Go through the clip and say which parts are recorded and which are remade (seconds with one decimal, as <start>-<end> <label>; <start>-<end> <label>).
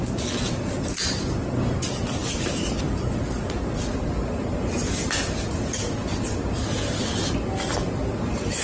0.0-8.6 recorded